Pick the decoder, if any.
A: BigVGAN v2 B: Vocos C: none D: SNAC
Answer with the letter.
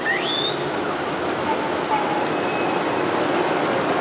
C